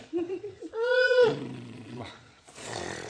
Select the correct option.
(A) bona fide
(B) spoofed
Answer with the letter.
B